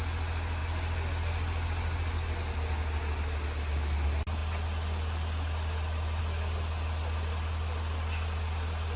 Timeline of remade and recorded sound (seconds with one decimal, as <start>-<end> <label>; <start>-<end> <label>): 0.0-9.0 recorded